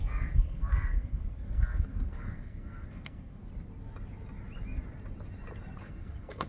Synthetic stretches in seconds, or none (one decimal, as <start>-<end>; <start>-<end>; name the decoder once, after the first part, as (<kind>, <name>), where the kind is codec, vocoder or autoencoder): 0.0-3.4 (codec, SNAC); 5.8-6.5